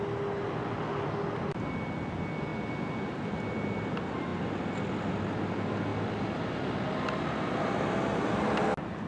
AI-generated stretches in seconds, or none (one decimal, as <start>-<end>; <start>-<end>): none